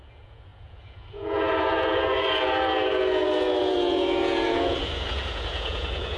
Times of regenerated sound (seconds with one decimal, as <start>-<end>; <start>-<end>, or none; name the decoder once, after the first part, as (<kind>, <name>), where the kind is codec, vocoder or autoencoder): 0.0-6.2 (vocoder, Vocos)